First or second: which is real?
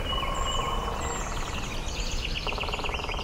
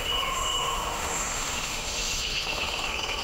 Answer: first